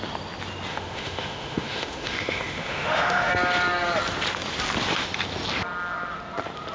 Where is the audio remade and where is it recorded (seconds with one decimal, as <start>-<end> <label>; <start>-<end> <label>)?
0.0-0.7 recorded; 0.7-3.3 remade; 3.3-6.7 recorded